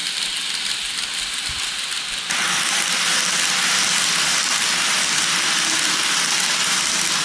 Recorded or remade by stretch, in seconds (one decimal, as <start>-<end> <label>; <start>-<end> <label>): 0.0-7.2 recorded